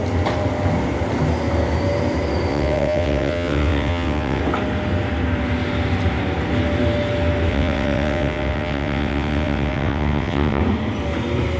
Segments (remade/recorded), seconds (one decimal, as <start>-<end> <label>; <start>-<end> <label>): 0.0-2.5 recorded; 2.5-4.4 remade; 4.4-7.5 recorded; 7.5-10.6 remade; 10.6-11.6 recorded